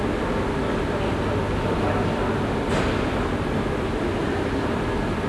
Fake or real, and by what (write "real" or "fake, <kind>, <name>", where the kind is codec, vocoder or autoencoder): real